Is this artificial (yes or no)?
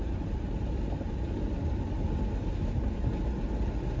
no